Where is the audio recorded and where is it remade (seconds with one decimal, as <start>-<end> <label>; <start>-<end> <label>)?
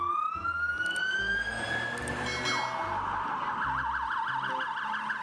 0.0-5.2 recorded